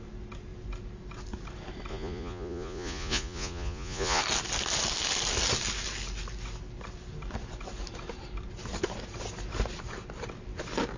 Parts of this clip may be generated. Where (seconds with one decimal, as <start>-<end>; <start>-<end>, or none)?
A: 1.9-4.2